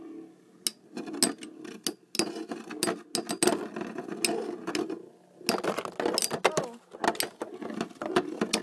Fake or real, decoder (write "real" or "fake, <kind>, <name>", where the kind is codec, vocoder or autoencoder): real